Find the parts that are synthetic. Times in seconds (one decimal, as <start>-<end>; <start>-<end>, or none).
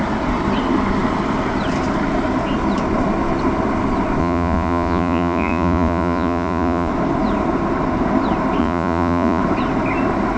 4.2-6.9; 8.6-9.4